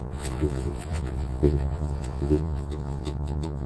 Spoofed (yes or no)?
yes